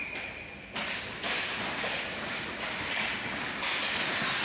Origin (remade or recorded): recorded